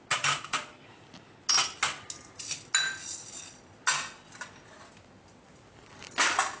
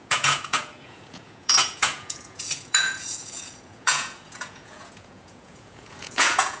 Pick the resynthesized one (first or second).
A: second